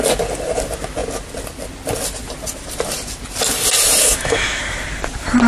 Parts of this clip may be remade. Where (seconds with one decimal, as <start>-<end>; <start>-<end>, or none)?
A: 4.0-4.6